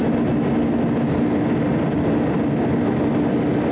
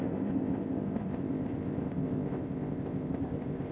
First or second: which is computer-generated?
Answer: second